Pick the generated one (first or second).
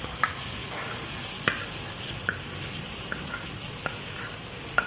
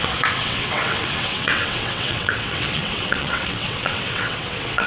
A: second